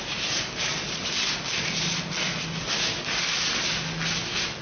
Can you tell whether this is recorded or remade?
recorded